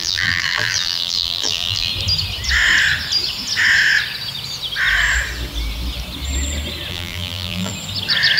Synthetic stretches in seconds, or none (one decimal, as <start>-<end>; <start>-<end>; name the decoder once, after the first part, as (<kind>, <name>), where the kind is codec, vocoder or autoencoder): 0.0-1.9 (vocoder, BigVGAN v2); 6.9-7.7